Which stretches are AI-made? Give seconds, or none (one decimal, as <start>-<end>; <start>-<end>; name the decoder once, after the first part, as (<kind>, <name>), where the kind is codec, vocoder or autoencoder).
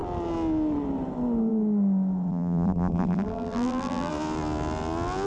2.3-4.1 (vocoder, BigVGAN v2)